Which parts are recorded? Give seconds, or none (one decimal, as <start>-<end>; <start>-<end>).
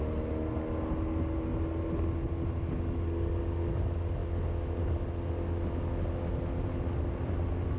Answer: 0.0-7.8